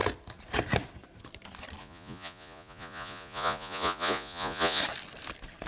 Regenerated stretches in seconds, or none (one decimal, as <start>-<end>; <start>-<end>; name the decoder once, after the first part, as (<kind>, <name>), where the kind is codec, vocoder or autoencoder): 1.8-4.8 (vocoder, Vocos)